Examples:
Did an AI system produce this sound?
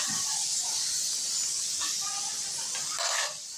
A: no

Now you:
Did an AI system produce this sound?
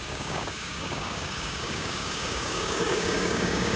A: yes